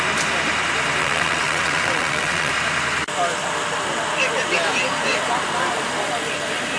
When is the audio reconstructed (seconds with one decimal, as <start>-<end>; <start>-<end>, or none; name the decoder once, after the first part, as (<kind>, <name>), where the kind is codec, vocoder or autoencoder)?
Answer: 1.0-2.5 (vocoder, WaveNeXt)